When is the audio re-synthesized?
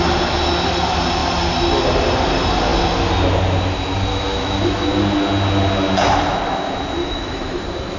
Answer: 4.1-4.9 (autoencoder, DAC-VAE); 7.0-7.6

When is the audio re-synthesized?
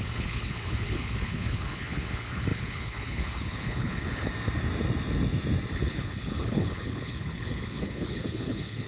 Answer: 0.0-4.3 (codec, HILCodec); 5.7-8.9